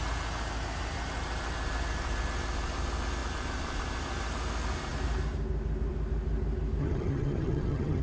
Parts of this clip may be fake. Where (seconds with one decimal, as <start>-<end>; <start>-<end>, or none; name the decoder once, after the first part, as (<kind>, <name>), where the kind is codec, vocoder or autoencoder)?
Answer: 6.8-8.0 (vocoder, HiFi-GAN)